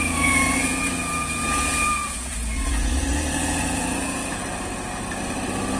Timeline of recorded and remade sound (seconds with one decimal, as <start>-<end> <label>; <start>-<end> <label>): 0.0-4.2 remade; 4.2-5.8 recorded